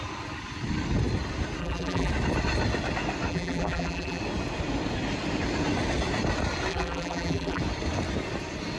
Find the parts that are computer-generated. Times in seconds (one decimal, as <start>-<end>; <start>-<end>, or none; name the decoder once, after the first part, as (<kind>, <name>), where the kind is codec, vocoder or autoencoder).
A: 1.6-2.1 (vocoder, BigVGAN v2); 3.3-4.2; 6.7-7.6